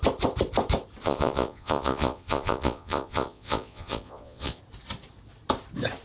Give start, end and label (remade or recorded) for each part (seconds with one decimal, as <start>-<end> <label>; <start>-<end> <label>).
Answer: 0.0-1.0 recorded; 1.0-4.6 remade; 4.6-6.0 recorded